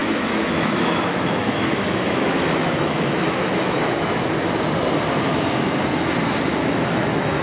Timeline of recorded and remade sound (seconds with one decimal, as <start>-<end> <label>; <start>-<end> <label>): 0.0-4.2 remade; 4.2-6.5 recorded; 6.5-7.4 remade